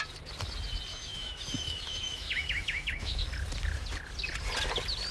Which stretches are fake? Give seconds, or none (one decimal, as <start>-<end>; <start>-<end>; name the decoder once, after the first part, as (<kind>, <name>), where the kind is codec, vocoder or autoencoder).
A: 0.9-3.2 (autoencoder, DAC-VAE)